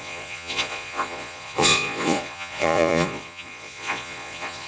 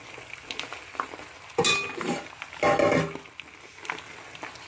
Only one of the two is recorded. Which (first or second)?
second